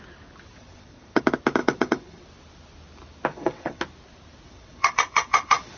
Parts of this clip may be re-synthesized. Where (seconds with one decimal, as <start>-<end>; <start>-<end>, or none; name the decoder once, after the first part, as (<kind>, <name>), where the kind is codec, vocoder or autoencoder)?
0.5-1.2 (vocoder, WaveNeXt); 1.6-2.2; 3.3-3.8; 4.5-5.8